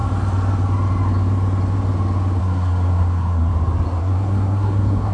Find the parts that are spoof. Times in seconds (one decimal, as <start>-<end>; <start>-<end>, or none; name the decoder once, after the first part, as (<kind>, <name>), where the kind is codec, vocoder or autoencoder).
2.4-3.5 (codec, SNAC); 4.0-5.1